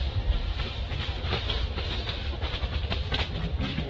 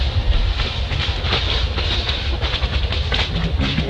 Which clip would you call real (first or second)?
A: second